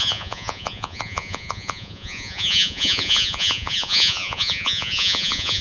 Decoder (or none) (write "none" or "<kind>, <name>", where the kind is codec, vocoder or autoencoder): vocoder, Vocos